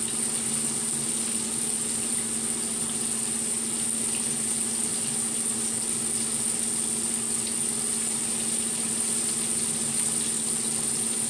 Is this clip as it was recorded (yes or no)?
yes